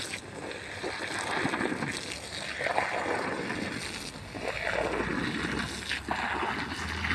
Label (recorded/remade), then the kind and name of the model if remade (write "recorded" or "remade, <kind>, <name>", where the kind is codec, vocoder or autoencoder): recorded